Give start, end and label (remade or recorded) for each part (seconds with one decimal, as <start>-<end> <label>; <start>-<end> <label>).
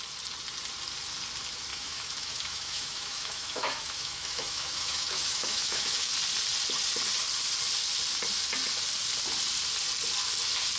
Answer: 0.0-1.7 recorded; 1.7-6.1 remade; 6.1-10.8 recorded